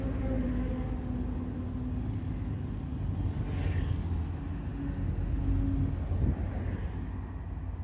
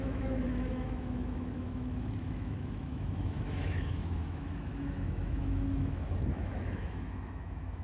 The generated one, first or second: second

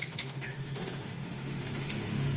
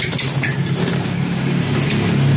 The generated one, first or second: first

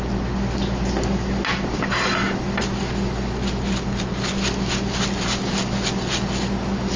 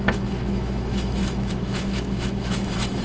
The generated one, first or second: second